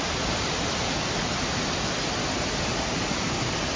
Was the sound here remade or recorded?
recorded